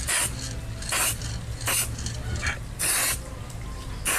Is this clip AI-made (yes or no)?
no